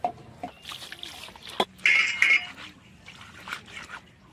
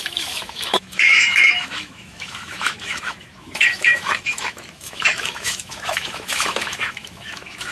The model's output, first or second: second